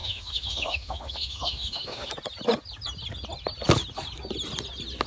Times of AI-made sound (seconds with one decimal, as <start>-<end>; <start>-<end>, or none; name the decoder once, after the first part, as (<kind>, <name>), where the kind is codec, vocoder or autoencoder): 0.0-2.1 (autoencoder, DAC-VAE)